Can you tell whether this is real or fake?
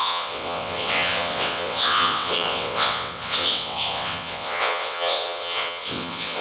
fake